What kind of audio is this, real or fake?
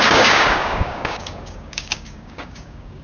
fake